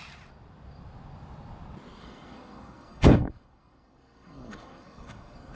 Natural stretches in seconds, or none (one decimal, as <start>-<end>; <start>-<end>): 0.0-2.0